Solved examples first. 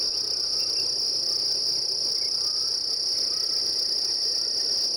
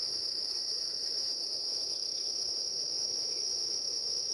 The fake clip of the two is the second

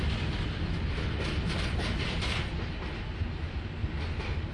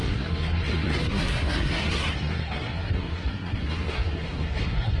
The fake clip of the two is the second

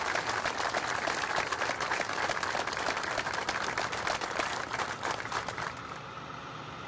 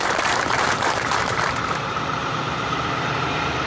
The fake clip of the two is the second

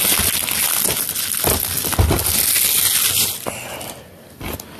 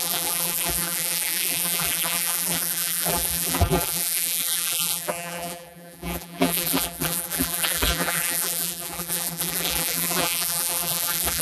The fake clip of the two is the second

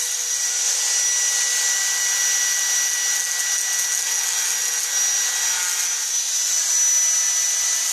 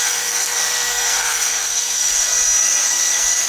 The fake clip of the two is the second